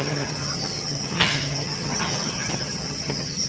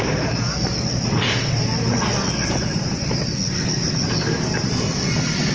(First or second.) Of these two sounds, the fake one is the first